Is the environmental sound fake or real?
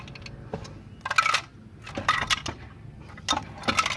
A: real